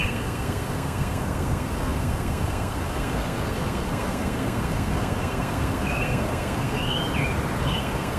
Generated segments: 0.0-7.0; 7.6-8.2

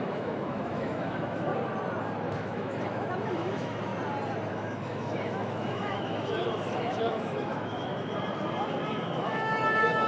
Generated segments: 0.0-1.5; 2.3-3.9; 4.5-7.9; 8.9-10.1

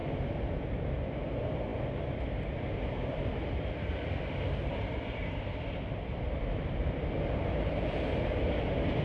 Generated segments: 0.0-0.8; 4.7-7.7

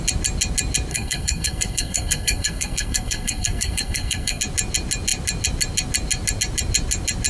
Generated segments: 0.9-4.4

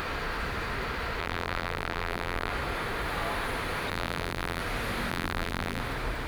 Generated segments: 1.2-2.5; 3.9-4.6; 5.1-5.8